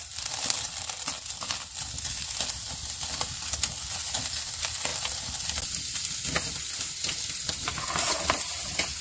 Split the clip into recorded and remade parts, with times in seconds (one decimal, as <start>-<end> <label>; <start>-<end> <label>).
0.0-9.0 recorded